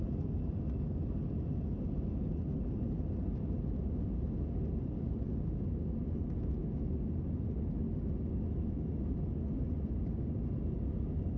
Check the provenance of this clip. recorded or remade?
recorded